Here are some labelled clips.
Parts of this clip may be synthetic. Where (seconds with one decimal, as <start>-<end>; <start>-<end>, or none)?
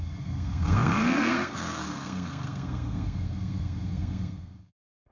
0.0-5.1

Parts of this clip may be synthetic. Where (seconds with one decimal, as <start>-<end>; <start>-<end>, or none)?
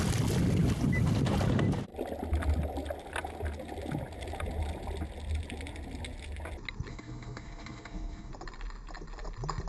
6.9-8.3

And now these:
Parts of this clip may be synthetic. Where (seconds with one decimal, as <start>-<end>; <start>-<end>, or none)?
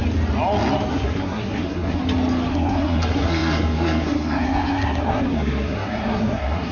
0.9-2.0; 2.5-6.7